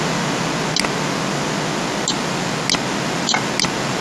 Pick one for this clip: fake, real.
real